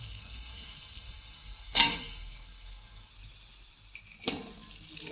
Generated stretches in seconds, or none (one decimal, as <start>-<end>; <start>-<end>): 0.0-3.1